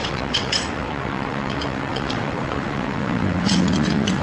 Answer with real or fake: fake